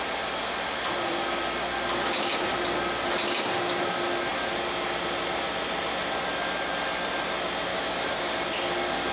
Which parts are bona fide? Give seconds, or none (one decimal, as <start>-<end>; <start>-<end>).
0.0-7.7; 8.3-9.1